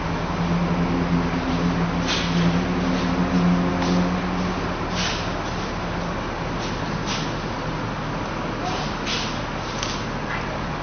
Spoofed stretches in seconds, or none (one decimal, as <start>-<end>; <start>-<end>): none